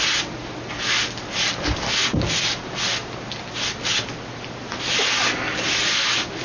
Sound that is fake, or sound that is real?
real